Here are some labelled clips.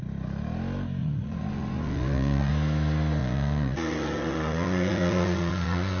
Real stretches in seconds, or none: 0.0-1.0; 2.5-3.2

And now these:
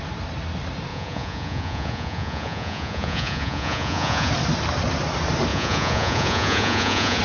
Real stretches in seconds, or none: 0.0-0.9; 4.3-5.5

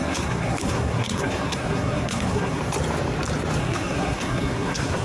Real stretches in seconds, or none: 2.6-3.6